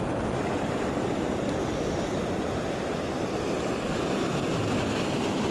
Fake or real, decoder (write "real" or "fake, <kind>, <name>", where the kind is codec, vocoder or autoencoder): real